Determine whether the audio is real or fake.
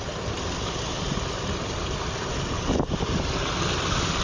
real